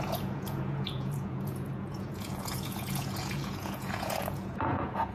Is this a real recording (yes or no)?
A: no